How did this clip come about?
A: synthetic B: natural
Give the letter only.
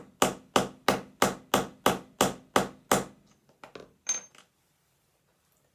B